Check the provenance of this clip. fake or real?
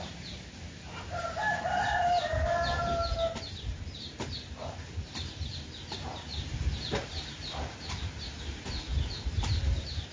fake